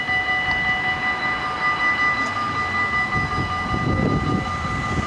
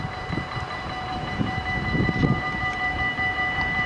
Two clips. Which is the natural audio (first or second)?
first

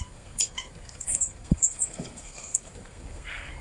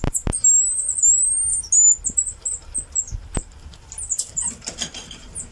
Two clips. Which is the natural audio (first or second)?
second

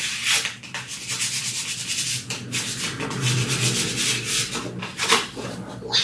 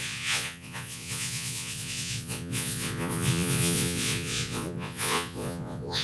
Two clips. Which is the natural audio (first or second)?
first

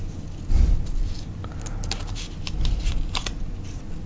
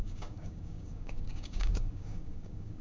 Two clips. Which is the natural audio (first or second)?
first